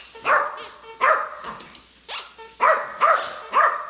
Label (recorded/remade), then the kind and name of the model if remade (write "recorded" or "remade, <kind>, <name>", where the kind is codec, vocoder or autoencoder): recorded